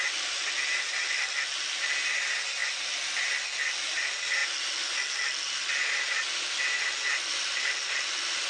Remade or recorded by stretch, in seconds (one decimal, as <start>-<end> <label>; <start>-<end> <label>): 0.0-8.5 recorded